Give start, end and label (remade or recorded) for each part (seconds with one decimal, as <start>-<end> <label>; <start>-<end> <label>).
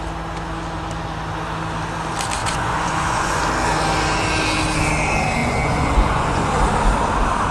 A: 0.0-2.4 recorded; 2.4-3.4 remade; 3.4-5.4 recorded; 5.4-6.5 remade; 6.5-7.5 recorded